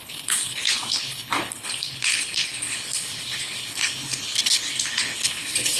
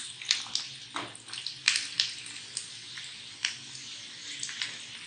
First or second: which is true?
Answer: second